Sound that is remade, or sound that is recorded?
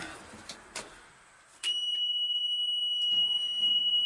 remade